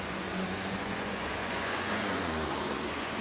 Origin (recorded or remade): remade